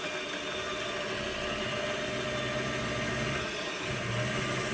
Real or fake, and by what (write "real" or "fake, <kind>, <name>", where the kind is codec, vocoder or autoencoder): real